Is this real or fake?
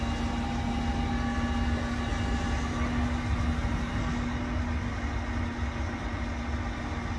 real